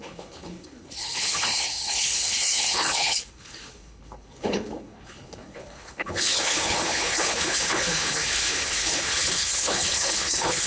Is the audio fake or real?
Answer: fake